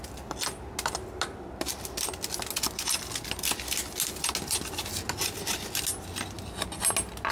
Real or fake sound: real